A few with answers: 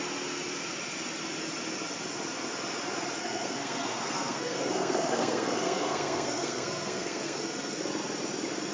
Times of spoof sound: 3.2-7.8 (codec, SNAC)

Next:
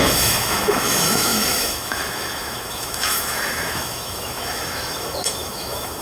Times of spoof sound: 0.0-6.0 (autoencoder, DAC-VAE)